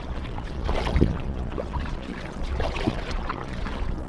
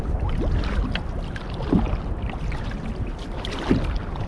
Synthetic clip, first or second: first